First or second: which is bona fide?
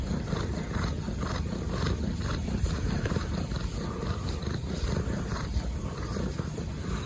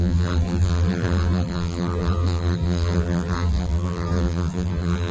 first